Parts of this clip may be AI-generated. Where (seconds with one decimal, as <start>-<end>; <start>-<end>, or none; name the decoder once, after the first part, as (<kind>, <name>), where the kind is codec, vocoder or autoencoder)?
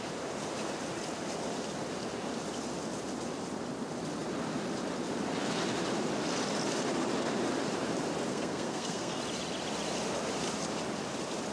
8.3-9.2 (codec, SNAC)